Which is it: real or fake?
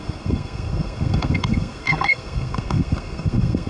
fake